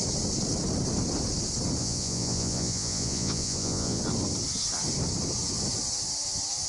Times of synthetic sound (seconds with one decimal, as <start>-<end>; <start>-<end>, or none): 1.8-4.0